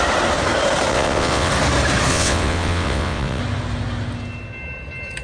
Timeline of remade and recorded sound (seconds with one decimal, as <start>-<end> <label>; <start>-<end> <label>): 0.0-0.9 recorded; 0.9-1.5 remade; 1.5-2.1 recorded; 2.1-3.4 remade; 3.4-5.2 recorded